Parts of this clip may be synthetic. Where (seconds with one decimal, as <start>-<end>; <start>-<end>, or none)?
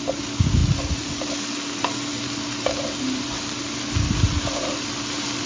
0.6-1.3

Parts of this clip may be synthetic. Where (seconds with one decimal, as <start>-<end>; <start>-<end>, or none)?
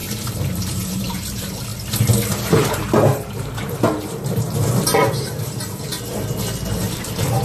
0.0-1.7; 2.3-5.9; 6.8-7.4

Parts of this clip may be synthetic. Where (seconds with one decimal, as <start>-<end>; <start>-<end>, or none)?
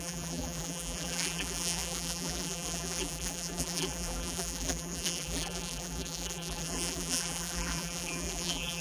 0.0-8.8